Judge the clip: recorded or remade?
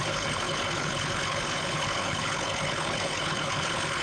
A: remade